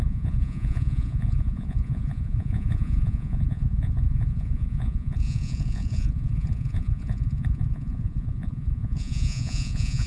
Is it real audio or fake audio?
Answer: fake